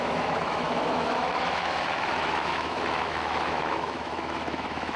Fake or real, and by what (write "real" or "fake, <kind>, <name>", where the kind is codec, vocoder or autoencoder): fake, autoencoder, DAC-VAE